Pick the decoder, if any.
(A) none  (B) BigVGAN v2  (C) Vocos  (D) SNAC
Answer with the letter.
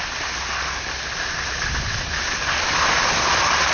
A